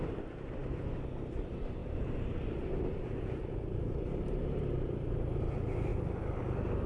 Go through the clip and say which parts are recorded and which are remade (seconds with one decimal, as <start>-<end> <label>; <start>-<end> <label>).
0.0-1.8 recorded; 1.8-4.4 remade; 4.4-5.9 recorded; 5.9-6.4 remade; 6.4-6.9 recorded